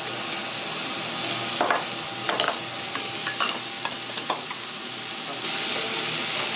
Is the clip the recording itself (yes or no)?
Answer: yes